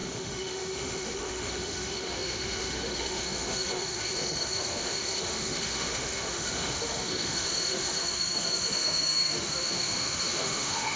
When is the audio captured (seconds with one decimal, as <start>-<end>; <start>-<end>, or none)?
none

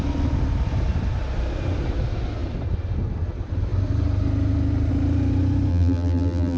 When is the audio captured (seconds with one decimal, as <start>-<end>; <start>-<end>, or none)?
0.0-5.7